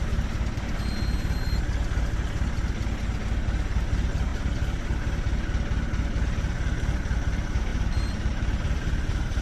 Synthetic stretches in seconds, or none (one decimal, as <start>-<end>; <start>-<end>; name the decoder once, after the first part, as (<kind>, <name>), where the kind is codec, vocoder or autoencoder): 7.7-9.4 (vocoder, BigVGAN v2)